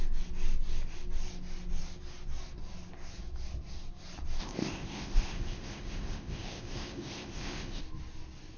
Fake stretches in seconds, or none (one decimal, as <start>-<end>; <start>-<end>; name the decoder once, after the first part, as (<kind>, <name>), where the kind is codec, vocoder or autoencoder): 4.4-7.8 (codec, ZipCodec)